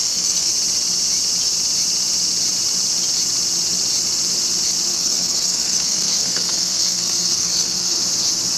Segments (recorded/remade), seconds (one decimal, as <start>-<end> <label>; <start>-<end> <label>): 0.0-0.5 remade; 0.5-4.9 recorded; 4.9-8.0 remade; 8.0-8.6 recorded